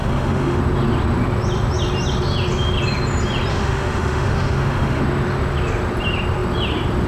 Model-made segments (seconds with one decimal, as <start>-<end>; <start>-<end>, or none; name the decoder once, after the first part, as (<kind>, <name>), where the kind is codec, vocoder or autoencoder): 0.0-0.6 (autoencoder, DAC-VAE); 3.5-5.0